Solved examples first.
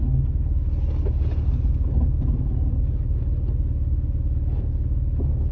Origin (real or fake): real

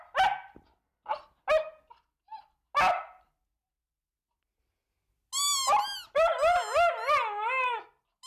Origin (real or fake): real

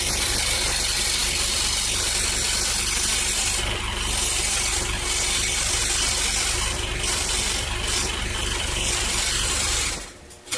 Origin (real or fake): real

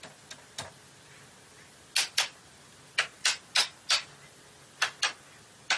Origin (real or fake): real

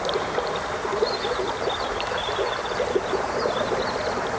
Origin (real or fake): real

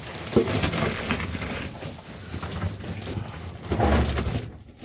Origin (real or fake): real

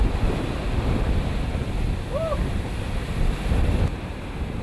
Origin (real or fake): real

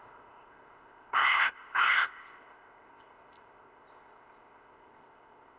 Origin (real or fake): fake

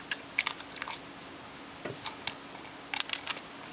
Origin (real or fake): real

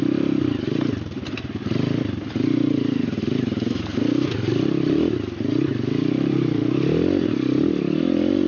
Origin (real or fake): real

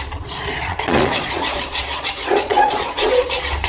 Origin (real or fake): fake